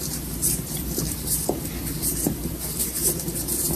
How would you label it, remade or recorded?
remade